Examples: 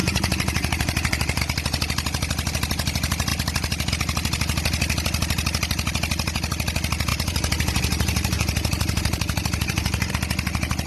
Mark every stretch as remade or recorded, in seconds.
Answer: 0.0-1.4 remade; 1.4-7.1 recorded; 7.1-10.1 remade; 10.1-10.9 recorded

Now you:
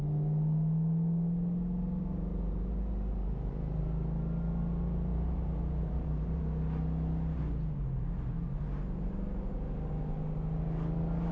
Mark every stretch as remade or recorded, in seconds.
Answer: 0.0-2.3 recorded; 2.3-3.8 remade; 3.8-5.1 recorded; 5.1-6.4 remade; 6.4-11.3 recorded

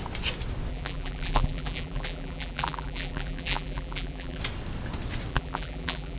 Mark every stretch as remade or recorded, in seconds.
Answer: 0.0-0.7 recorded; 0.7-4.4 remade; 4.4-5.3 recorded; 5.3-6.2 remade

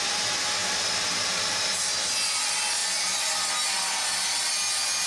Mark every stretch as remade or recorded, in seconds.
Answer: 0.0-0.6 recorded; 0.6-1.9 remade; 1.9-5.1 recorded

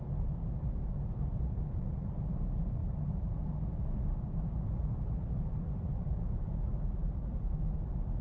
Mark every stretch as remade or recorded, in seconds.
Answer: 0.0-2.8 remade; 2.8-4.4 recorded; 4.4-8.2 remade

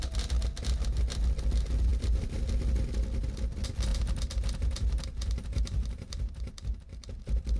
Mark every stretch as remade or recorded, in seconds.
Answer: 0.0-3.9 recorded; 3.9-7.6 remade

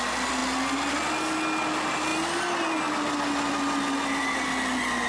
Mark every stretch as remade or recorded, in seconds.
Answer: 0.0-5.1 recorded